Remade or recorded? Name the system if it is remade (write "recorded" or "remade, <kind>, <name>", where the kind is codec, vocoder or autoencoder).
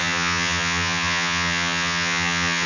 remade, vocoder, HiFi-GAN